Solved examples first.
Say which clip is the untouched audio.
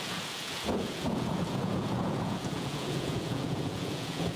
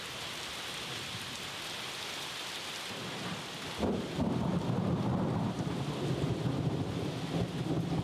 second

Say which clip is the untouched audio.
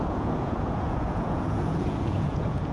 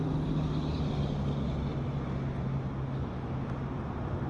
second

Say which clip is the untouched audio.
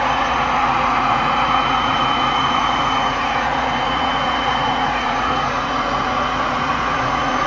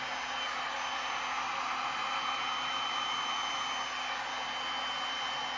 second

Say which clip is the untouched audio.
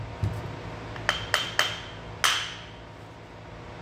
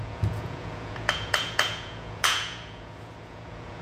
first